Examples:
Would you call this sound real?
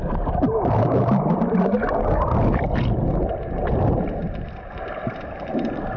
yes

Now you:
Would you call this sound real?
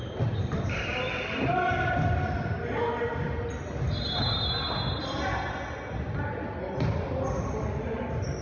yes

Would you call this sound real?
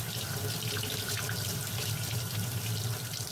yes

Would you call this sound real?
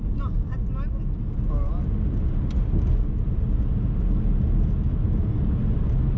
yes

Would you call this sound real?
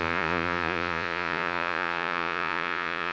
no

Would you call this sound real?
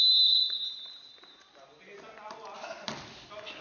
yes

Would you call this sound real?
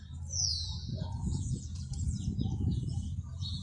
no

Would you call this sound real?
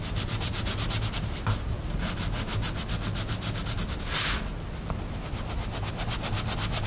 yes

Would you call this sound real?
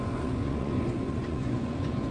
no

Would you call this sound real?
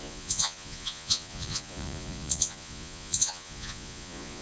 no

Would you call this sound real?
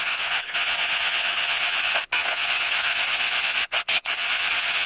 no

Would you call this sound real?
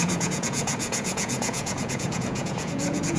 no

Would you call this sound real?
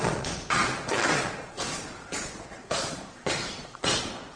no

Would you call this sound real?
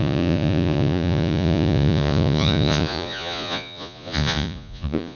no